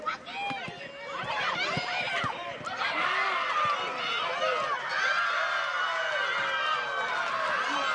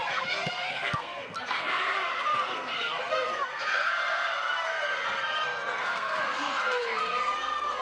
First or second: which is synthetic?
second